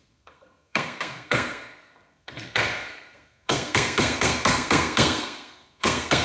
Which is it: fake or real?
fake